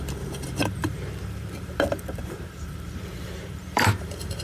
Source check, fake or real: fake